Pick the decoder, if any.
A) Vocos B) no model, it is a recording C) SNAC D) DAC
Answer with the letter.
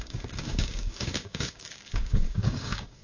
D